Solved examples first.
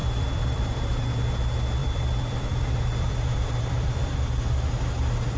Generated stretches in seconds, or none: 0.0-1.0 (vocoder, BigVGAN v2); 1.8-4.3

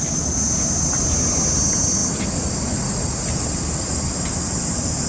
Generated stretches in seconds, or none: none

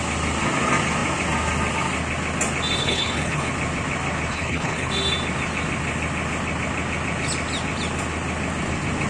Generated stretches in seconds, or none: 2.8-3.5 (codec, HILCodec); 4.3-4.9

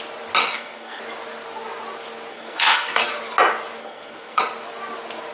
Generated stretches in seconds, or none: 0.4-1.0 (codec, SNAC); 2.3-3.1; 3.8-4.4

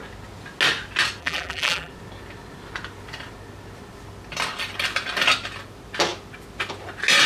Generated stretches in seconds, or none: 1.2-1.9 (vocoder, BigVGAN v2)

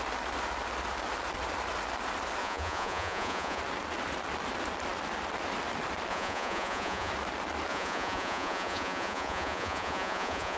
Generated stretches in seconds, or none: 2.4-3.6 (vocoder, Vocos); 6.1-7.1; 7.7-10.6

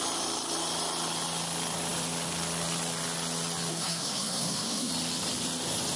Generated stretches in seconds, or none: 3.7-4.9 (codec, SNAC)